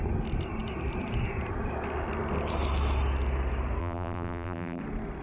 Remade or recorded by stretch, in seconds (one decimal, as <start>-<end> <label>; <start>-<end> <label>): 0.0-3.8 recorded; 3.8-4.8 remade; 4.8-5.2 recorded